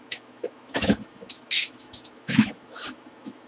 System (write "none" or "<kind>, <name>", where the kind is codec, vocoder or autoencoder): autoencoder, DAC-VAE